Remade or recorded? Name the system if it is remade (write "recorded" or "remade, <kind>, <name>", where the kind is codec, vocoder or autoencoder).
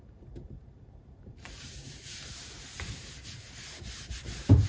remade, vocoder, BigVGAN v2